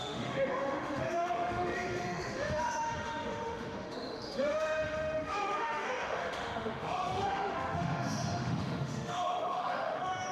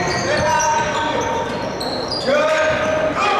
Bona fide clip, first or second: second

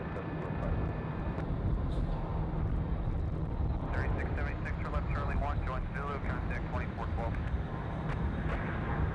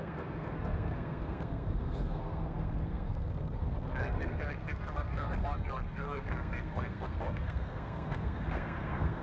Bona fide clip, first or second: first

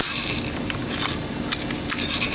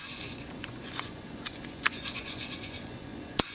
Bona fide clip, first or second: first